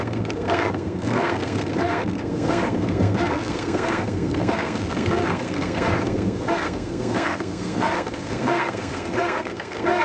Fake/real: fake